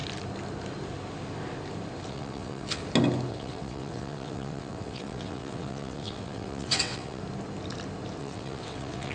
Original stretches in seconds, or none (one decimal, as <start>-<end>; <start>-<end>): 0.0-2.1; 2.8-3.3; 7.2-8.2